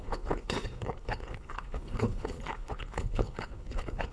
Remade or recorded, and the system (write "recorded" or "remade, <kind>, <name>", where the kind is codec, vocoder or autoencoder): remade, codec, HILCodec